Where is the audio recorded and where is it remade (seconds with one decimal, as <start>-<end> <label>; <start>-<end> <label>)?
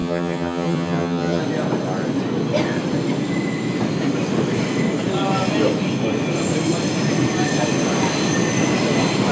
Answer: 0.0-1.4 remade; 1.4-9.3 recorded